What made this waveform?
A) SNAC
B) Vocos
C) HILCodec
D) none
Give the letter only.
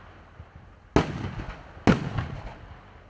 D